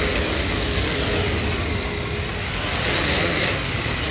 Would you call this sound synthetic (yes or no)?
no